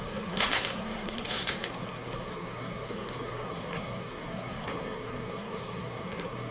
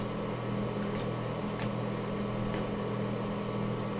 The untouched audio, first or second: second